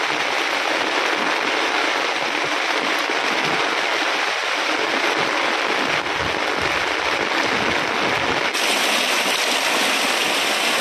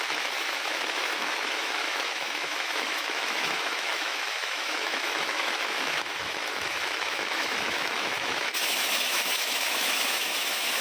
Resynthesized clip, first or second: second